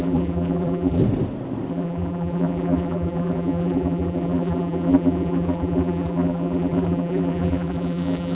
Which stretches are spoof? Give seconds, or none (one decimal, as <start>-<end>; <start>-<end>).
0.0-1.0; 1.7-8.3